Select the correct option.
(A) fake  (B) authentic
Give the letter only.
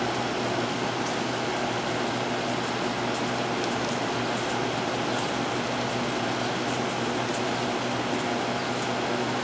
B